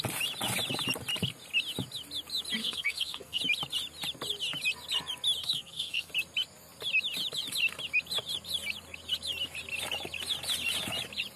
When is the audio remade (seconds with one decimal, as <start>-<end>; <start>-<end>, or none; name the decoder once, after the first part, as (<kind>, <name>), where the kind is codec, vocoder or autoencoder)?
2.6-3.4 (codec, SNAC); 5.4-6.1